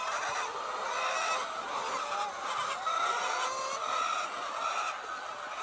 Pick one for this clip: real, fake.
real